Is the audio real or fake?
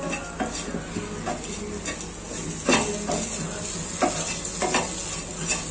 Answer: real